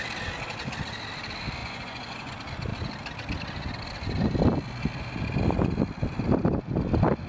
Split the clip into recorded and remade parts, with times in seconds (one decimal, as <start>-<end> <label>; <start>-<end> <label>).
0.0-1.6 recorded; 1.6-2.3 remade; 2.3-7.3 recorded